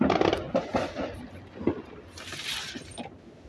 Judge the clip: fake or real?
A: real